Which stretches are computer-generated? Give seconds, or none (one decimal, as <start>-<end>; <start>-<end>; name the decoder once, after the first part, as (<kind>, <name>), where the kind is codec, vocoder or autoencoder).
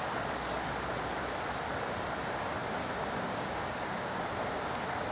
2.8-4.2 (codec, DAC)